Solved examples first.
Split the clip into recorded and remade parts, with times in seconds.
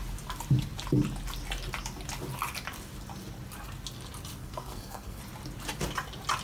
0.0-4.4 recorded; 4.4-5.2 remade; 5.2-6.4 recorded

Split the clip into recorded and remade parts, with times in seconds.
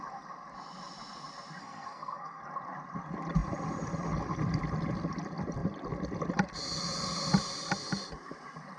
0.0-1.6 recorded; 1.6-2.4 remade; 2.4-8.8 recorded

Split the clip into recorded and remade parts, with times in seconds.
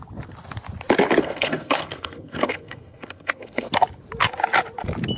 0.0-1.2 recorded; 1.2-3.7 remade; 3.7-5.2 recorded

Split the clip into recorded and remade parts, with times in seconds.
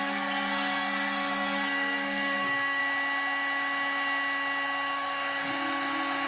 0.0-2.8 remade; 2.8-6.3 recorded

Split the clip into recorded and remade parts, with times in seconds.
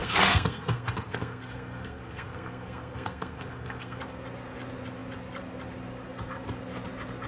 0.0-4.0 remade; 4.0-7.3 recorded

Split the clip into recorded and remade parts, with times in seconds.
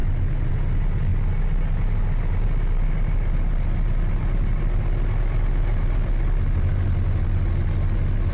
0.0-8.3 recorded